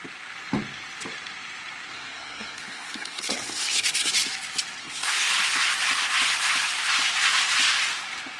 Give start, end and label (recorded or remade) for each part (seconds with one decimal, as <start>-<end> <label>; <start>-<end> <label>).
0.0-1.9 recorded; 1.9-4.1 remade; 4.1-4.8 recorded; 4.8-5.3 remade; 5.3-8.4 recorded